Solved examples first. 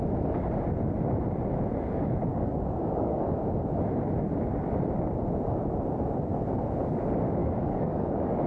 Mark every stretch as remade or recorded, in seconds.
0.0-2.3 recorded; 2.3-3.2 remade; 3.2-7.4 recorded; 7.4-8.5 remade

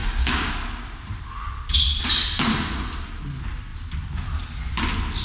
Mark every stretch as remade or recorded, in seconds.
0.0-0.5 remade; 0.5-5.2 recorded

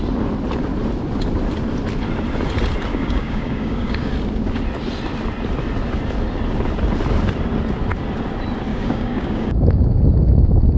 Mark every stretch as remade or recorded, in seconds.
0.0-2.9 recorded; 2.9-4.1 remade; 4.1-8.7 recorded; 8.7-9.8 remade; 9.8-10.8 recorded

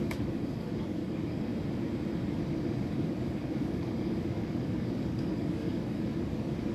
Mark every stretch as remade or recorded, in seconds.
0.0-1.5 remade; 1.5-2.8 recorded; 2.8-6.7 remade

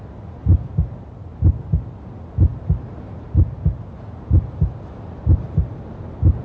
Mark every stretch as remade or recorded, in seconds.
0.0-6.4 recorded

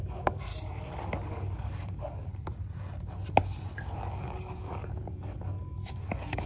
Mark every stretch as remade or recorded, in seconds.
0.0-0.5 remade; 0.5-1.3 recorded; 1.3-2.3 remade; 2.3-4.1 recorded; 4.1-6.5 remade

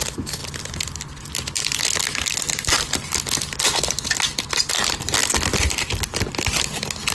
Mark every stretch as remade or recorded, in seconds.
0.0-7.1 recorded

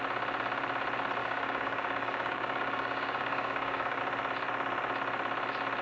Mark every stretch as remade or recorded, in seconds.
0.0-1.2 recorded; 1.2-4.0 remade; 4.0-5.8 recorded